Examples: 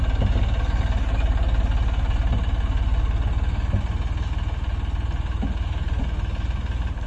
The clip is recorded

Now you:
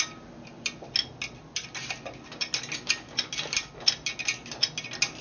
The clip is recorded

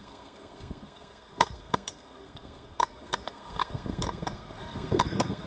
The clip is remade